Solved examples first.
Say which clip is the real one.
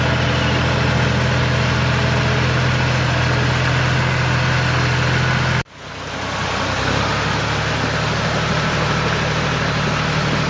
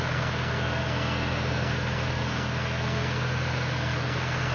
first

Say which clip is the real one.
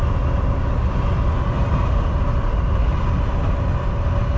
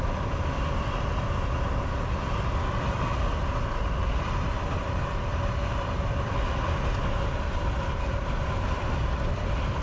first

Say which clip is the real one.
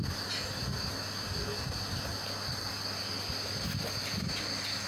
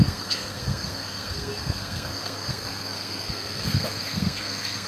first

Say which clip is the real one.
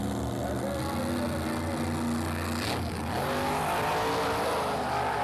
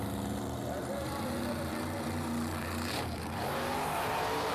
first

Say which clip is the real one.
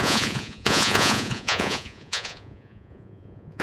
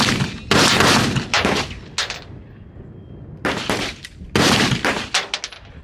second